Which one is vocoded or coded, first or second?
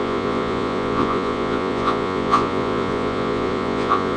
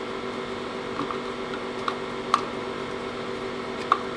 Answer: first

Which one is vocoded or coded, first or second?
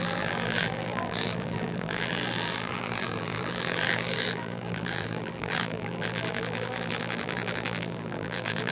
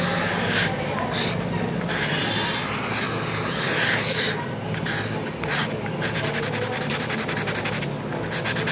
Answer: first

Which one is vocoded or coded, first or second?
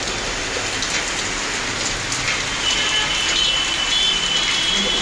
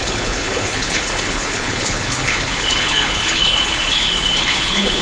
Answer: second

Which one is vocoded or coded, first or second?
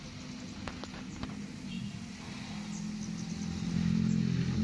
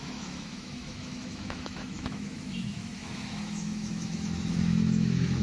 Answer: second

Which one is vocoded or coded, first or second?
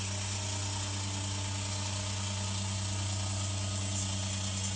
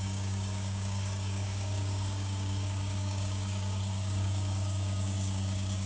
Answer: second